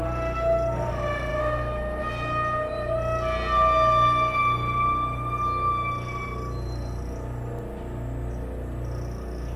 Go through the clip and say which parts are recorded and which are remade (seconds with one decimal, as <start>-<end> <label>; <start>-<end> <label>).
0.0-1.3 recorded; 1.3-2.0 remade; 2.0-9.6 recorded